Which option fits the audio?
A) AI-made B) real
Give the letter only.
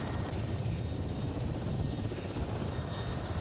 B